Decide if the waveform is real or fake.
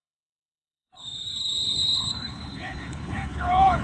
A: fake